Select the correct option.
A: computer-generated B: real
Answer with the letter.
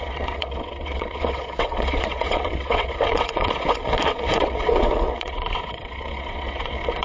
A